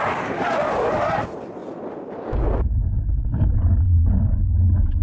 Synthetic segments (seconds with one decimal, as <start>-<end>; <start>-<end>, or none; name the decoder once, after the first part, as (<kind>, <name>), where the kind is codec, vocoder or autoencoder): none